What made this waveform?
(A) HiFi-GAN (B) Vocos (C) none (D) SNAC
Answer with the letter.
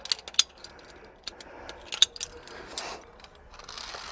C